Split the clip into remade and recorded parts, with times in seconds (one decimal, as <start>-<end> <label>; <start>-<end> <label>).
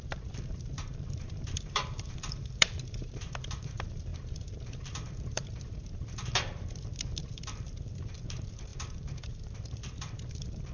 0.0-10.7 remade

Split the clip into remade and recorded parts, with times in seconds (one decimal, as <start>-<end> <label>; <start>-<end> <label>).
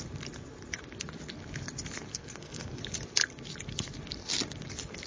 0.0-2.1 recorded; 2.1-2.8 remade; 2.8-5.1 recorded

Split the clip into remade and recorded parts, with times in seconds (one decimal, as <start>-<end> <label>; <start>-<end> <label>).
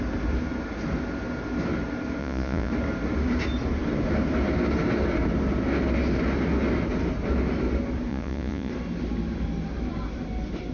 0.0-2.2 recorded; 2.2-2.7 remade; 2.7-8.1 recorded; 8.1-8.7 remade; 8.7-10.7 recorded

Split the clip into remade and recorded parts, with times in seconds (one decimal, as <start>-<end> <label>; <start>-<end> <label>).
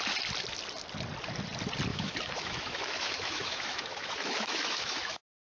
0.0-1.9 recorded; 1.9-5.5 remade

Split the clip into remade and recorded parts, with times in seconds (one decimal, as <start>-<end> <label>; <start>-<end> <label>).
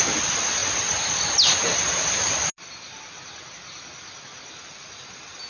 0.0-5.5 recorded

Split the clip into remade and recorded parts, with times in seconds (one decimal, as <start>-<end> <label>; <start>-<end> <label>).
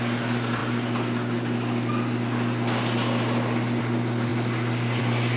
0.0-5.4 recorded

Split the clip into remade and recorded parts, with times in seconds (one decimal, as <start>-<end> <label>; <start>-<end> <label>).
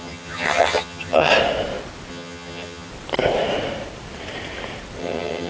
0.0-1.3 remade; 1.3-2.1 recorded; 2.1-2.9 remade; 2.9-5.0 recorded; 5.0-5.5 remade